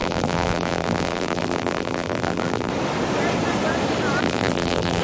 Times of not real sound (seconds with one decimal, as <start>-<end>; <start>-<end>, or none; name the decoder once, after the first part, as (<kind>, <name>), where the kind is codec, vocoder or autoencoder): 0.0-2.7 (vocoder, BigVGAN v2); 4.2-5.0